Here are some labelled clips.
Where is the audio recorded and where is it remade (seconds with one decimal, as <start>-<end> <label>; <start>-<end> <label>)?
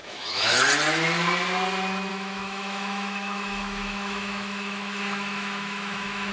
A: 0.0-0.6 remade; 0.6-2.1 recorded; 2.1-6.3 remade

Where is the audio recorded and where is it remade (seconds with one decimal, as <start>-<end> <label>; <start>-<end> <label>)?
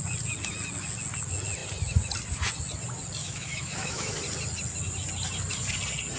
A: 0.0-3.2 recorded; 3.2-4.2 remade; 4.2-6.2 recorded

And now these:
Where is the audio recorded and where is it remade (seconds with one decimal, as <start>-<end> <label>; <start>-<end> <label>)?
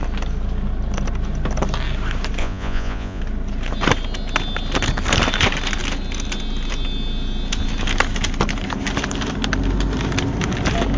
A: 0.0-2.4 recorded; 2.4-3.2 remade; 3.2-11.0 recorded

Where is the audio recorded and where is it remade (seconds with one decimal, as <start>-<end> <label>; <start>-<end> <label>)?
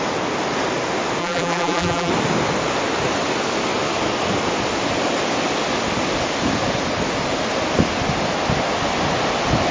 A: 0.0-1.2 recorded; 1.2-2.1 remade; 2.1-9.7 recorded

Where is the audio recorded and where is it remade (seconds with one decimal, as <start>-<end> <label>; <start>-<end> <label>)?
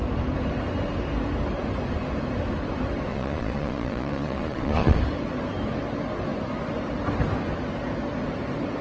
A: 0.0-3.1 recorded; 3.1-5.0 remade; 5.0-8.8 recorded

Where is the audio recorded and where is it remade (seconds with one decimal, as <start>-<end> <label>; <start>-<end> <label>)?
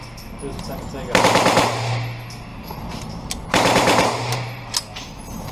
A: 0.0-2.5 recorded; 2.5-4.7 remade; 4.7-5.5 recorded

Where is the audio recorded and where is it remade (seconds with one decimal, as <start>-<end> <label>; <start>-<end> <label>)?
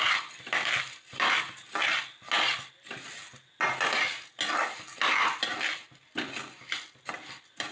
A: 0.0-7.7 recorded